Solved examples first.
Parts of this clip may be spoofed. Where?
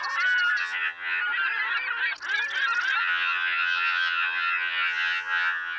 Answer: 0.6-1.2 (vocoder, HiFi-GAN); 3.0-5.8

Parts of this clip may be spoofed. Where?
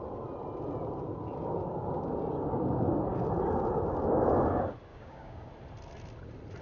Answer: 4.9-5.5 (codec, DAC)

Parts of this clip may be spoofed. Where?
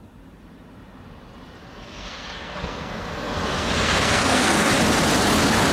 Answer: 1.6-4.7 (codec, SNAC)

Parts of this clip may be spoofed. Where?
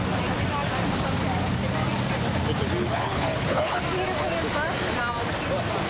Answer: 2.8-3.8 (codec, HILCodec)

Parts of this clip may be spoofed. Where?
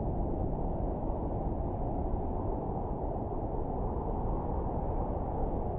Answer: none